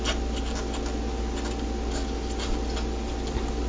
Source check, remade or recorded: recorded